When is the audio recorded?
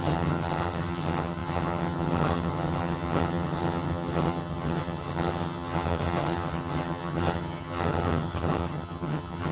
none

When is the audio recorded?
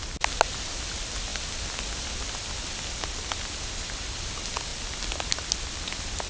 0.0-6.3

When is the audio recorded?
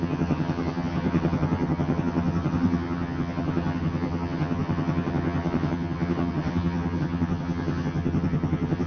none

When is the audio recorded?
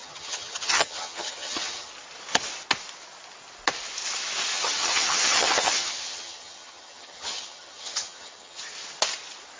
1.9-4.5; 8.6-9.6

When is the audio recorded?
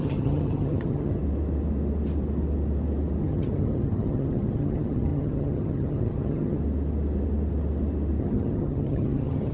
1.2-3.2; 6.6-8.2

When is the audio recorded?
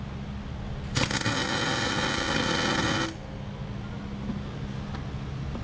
0.0-5.6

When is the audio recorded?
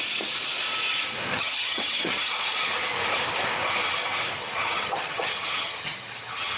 0.0-1.3; 2.3-4.4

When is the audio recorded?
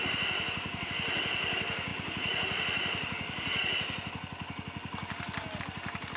0.0-6.2